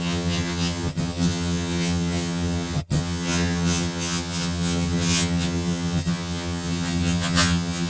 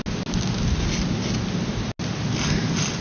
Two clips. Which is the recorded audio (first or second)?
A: second